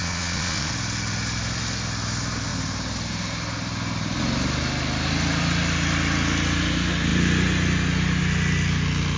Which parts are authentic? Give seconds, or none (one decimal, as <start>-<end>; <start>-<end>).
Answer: 0.7-9.2